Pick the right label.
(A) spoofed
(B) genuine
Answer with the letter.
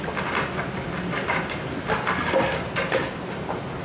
B